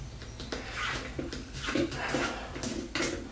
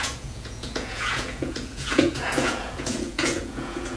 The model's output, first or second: second